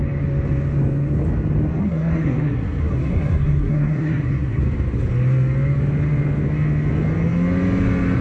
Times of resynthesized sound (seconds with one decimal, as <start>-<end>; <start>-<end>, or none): 1.8-4.6